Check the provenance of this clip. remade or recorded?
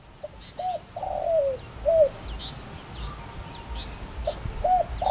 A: recorded